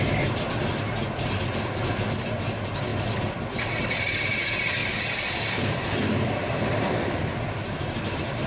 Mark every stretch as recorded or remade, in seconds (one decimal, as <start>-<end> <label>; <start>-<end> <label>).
0.0-2.9 recorded; 2.9-4.2 remade; 4.2-4.8 recorded; 4.8-8.5 remade